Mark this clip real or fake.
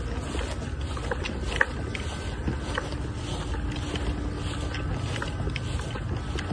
real